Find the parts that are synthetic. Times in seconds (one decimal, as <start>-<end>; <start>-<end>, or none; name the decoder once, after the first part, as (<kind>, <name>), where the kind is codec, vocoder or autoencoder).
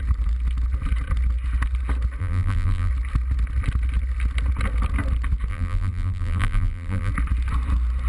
2.2-2.9 (vocoder, BigVGAN v2); 5.5-7.1